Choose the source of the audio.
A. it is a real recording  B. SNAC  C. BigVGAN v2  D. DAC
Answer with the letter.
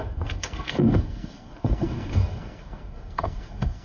B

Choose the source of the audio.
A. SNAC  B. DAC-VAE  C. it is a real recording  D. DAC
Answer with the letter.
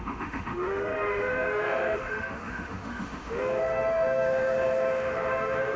B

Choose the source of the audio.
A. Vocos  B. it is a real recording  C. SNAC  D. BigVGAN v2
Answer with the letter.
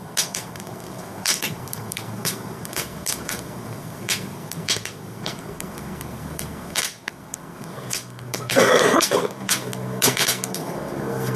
C